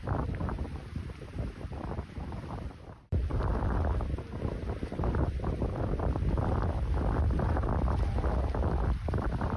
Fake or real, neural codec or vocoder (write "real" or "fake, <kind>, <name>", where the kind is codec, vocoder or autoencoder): fake, vocoder, BigVGAN v2